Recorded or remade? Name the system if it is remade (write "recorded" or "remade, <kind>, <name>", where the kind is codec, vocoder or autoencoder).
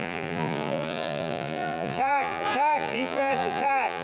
remade, vocoder, Vocos